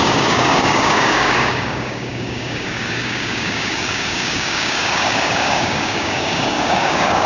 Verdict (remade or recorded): remade